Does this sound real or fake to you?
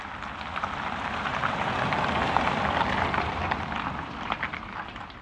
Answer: fake